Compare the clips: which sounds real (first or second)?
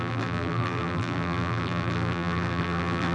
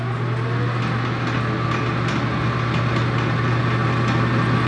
second